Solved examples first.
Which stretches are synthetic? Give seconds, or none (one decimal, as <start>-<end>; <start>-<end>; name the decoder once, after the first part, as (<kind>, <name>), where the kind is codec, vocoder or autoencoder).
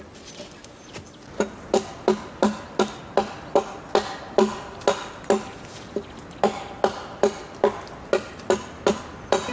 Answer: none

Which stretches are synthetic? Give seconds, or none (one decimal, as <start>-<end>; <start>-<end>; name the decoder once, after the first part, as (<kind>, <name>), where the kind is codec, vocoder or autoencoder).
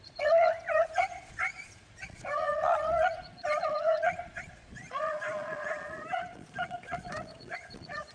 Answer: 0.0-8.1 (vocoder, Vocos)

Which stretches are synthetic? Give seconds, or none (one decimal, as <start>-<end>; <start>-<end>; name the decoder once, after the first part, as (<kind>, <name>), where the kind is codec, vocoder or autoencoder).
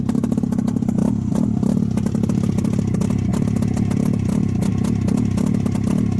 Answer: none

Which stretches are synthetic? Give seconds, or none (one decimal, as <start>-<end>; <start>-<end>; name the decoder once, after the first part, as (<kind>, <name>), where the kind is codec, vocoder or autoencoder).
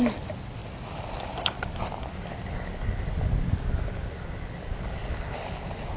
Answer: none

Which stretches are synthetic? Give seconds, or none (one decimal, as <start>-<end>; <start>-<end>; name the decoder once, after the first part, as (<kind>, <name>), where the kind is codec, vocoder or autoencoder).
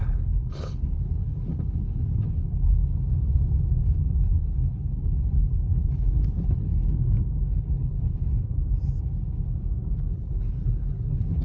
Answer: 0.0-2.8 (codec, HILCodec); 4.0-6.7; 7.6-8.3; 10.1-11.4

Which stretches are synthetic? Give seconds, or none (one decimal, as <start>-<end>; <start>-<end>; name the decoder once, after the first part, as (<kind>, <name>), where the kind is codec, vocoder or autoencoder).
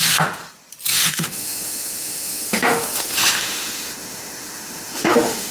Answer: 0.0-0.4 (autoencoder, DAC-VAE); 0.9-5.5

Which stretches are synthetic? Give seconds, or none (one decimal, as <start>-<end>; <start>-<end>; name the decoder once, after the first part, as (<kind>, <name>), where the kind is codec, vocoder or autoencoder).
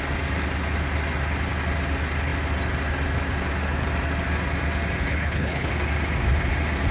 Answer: 5.1-5.7 (codec, HILCodec)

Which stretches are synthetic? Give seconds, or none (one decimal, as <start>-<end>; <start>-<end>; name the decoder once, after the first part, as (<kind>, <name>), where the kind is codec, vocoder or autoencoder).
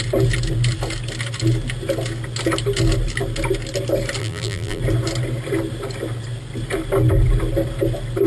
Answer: 4.2-4.8 (vocoder, BigVGAN v2)